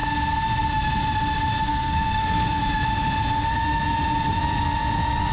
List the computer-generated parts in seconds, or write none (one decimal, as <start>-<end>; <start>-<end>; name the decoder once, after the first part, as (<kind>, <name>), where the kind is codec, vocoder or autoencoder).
1.7-2.6 (codec, SNAC)